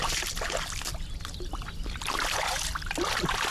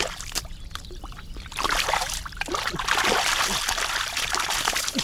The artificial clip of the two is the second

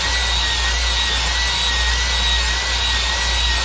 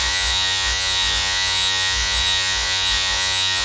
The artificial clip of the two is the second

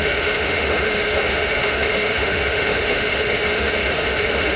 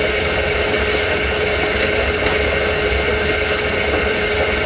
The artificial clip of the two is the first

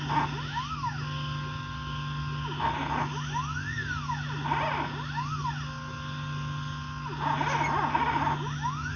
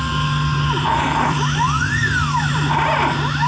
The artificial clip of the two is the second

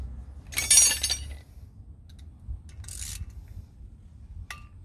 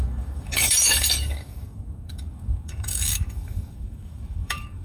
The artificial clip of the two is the second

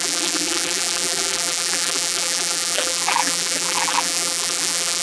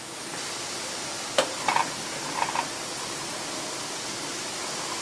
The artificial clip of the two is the first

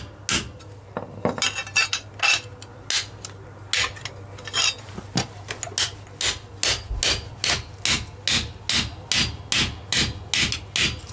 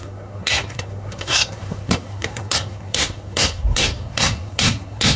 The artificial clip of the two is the second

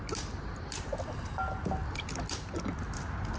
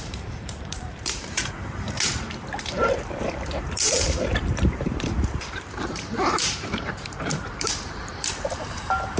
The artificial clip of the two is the second